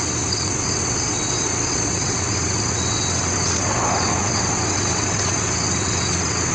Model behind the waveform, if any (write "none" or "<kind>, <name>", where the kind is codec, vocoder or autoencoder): vocoder, WaveNeXt